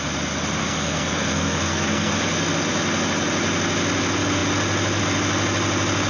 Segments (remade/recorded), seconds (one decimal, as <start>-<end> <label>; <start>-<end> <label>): 0.0-0.6 recorded; 0.6-2.1 remade; 2.1-6.1 recorded